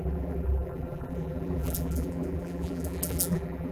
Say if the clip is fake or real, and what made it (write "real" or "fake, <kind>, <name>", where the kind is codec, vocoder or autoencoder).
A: fake, vocoder, BigVGAN v2